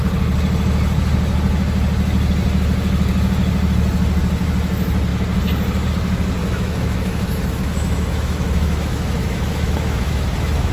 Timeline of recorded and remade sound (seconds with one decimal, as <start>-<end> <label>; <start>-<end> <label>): 0.0-6.4 recorded; 6.4-10.7 remade